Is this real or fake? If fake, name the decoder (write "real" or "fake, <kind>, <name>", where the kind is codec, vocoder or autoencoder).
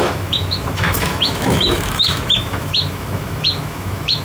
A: fake, autoencoder, DAC-VAE